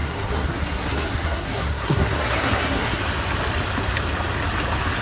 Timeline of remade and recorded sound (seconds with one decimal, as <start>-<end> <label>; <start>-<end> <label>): 0.0-3.0 remade; 3.0-5.0 recorded